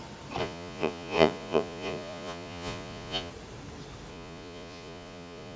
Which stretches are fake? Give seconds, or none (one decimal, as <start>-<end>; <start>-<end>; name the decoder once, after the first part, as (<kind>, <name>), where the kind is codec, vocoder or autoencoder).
0.4-3.3 (vocoder, Vocos); 4.1-5.6